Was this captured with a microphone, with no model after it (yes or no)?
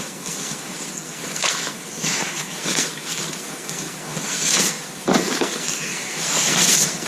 no